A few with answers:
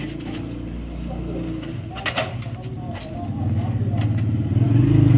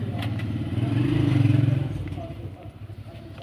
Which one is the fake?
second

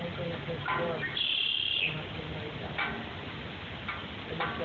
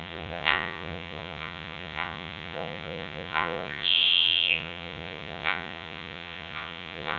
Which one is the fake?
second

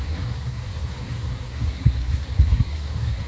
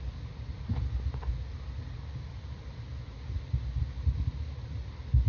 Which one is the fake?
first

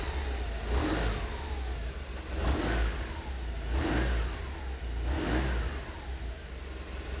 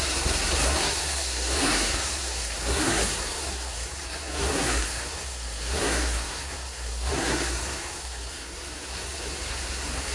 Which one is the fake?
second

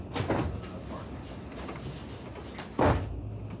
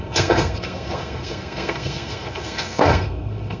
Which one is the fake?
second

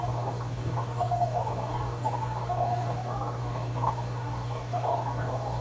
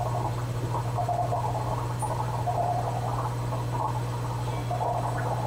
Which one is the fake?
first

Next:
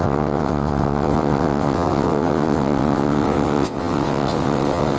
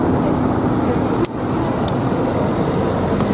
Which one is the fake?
first